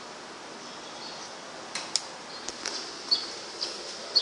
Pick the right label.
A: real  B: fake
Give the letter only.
A